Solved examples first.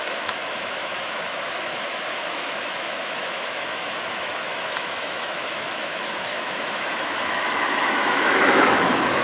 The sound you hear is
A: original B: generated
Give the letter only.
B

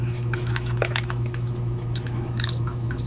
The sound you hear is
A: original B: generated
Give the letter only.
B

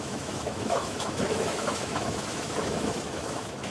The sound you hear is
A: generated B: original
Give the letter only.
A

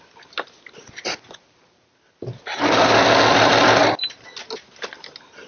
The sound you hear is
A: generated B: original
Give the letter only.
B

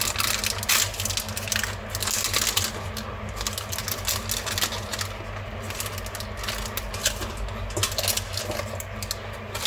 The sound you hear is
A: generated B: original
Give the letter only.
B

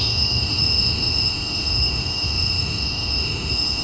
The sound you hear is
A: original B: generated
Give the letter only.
B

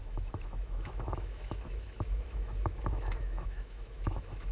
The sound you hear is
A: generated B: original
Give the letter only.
A